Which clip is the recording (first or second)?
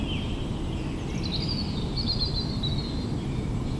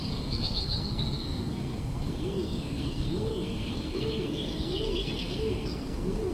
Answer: first